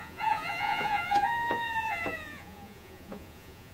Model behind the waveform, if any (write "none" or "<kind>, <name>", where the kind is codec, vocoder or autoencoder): vocoder, Vocos